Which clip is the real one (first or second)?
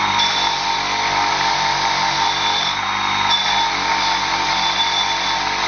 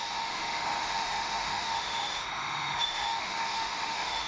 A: first